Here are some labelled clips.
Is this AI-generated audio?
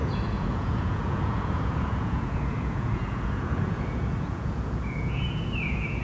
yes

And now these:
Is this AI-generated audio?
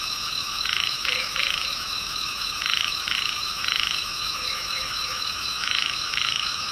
yes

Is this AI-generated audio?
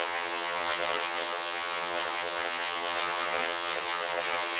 yes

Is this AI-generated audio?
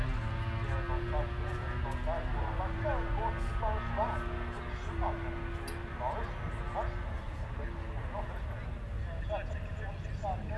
no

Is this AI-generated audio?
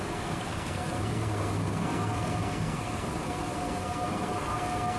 yes